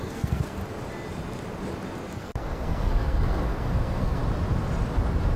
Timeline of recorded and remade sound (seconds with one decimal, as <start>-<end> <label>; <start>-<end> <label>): 0.0-0.6 remade; 0.6-2.2 recorded; 2.2-4.2 remade; 4.2-5.4 recorded

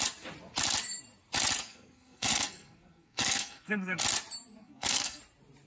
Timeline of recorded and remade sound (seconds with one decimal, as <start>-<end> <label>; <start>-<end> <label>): 0.0-1.6 recorded; 1.6-4.0 remade; 4.0-4.6 recorded; 4.6-5.2 remade; 5.2-5.7 recorded

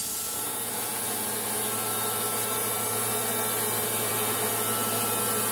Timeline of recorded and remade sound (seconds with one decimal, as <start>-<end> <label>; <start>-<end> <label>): 0.0-5.5 recorded